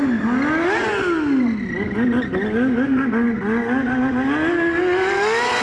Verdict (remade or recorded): recorded